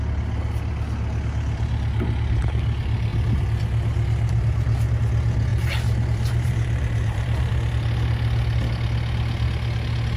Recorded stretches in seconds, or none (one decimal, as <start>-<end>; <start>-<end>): 0.0-5.5; 7.5-10.2